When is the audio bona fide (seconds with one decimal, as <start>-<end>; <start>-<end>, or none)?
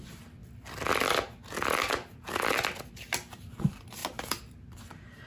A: 0.0-4.0